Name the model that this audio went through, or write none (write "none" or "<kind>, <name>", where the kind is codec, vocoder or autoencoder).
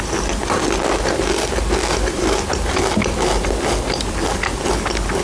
none